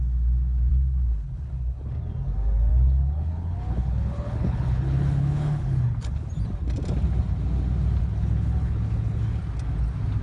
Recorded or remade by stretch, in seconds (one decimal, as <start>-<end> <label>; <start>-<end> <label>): 0.0-0.7 recorded; 0.7-1.9 remade; 1.9-2.7 recorded; 2.7-6.3 remade; 6.3-8.0 recorded; 8.0-9.4 remade; 9.4-10.2 recorded